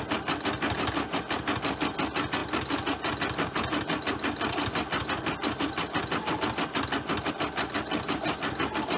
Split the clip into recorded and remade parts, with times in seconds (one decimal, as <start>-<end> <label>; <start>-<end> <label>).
0.0-9.0 recorded